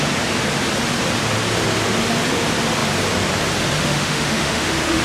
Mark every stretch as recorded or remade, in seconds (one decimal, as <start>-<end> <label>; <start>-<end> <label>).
0.0-3.8 recorded; 3.8-5.0 remade